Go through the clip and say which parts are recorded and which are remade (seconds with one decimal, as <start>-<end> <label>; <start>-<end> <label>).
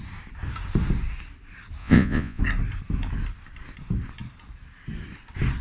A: 0.0-1.8 recorded; 1.8-2.4 remade; 2.4-5.6 recorded